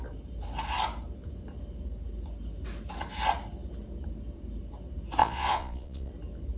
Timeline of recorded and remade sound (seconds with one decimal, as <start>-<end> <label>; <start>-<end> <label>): 0.0-5.2 recorded; 5.2-6.1 remade; 6.1-6.6 recorded